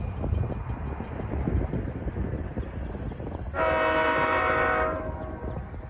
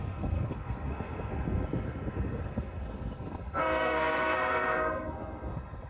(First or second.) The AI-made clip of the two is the second